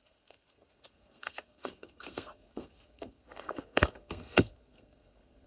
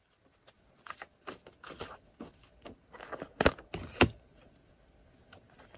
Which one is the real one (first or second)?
second